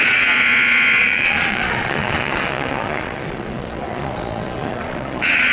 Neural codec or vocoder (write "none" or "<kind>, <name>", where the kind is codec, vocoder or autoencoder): vocoder, Vocos